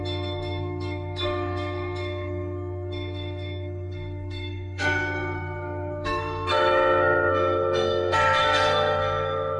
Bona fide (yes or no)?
no